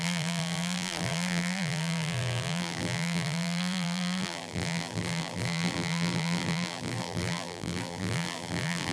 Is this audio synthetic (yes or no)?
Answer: yes